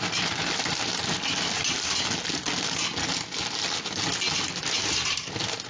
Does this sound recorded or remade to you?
recorded